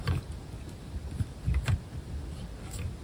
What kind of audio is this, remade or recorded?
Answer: recorded